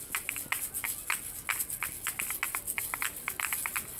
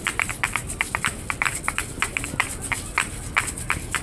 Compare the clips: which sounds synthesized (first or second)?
second